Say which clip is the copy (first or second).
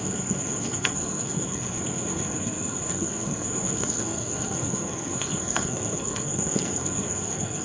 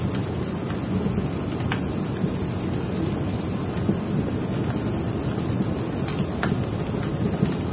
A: first